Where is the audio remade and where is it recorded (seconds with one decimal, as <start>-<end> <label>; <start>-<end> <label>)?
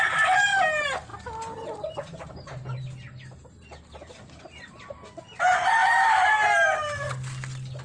0.0-7.8 recorded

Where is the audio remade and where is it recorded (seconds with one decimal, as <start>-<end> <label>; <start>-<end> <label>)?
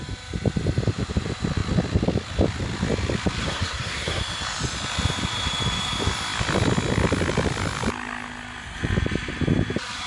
0.0-3.4 recorded; 3.4-4.2 remade; 4.2-10.1 recorded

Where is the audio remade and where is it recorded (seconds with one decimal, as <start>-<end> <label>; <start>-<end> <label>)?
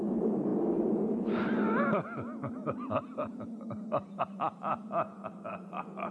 0.0-6.1 recorded